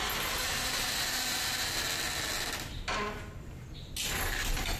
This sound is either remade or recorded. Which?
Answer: recorded